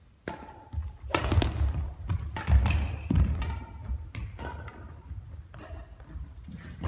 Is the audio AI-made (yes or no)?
no